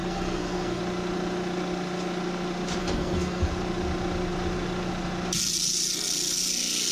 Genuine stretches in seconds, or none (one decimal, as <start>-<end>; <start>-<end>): 0.8-2.8; 3.5-6.9